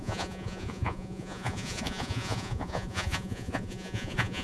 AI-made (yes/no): yes